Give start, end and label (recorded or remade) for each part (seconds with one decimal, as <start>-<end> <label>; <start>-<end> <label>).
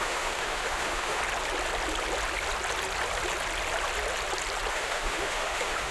0.0-1.2 remade; 1.2-4.7 recorded; 4.7-5.9 remade